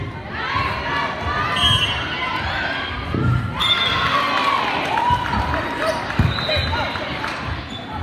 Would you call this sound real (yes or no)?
yes